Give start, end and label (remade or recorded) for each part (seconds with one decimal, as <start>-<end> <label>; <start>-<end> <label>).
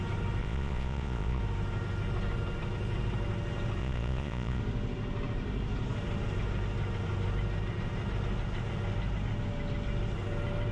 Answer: 0.0-0.4 recorded; 0.4-1.4 remade; 1.4-3.8 recorded; 3.8-4.6 remade; 4.6-10.7 recorded